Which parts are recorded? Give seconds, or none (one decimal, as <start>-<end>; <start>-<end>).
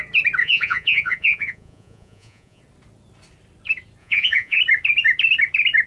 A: 0.0-0.4; 2.6-4.0; 4.6-5.9